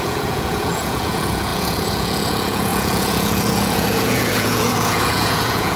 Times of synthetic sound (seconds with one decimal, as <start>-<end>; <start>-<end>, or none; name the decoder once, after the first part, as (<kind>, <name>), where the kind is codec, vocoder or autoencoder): 0.0-5.8 (vocoder, Vocos)